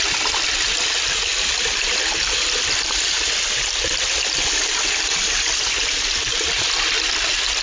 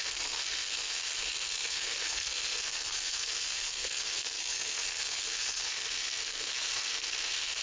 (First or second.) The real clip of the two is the first